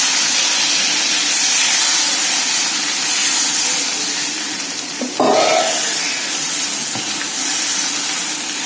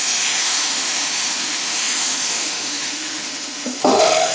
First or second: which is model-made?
second